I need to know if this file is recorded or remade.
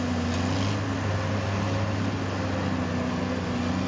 recorded